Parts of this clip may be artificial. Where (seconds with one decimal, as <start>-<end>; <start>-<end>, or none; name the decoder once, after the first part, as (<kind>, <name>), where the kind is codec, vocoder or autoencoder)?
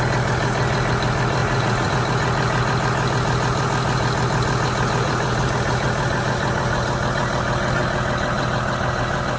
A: 1.4-1.9 (vocoder, Vocos)